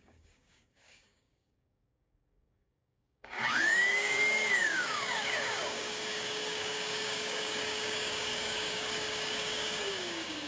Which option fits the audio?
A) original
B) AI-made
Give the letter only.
B